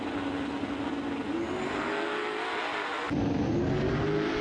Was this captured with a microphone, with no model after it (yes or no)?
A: yes